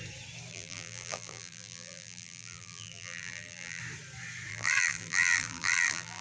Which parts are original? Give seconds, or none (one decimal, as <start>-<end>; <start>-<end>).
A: 0.0-0.5; 3.8-4.5